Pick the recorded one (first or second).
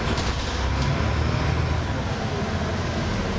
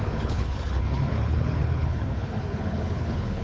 first